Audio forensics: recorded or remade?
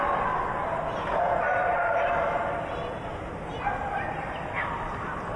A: recorded